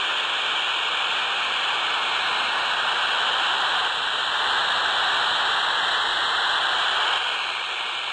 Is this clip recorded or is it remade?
recorded